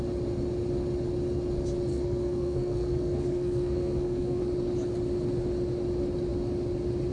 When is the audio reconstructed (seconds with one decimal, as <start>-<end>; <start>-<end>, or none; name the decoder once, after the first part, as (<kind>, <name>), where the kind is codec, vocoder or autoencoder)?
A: 1.9-4.4 (codec, SNAC)